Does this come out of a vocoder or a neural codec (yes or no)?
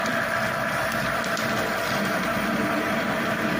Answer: no